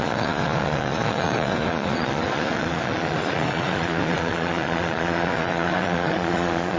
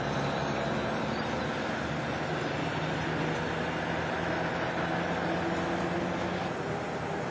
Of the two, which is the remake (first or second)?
first